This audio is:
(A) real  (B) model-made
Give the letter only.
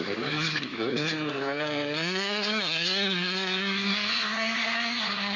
B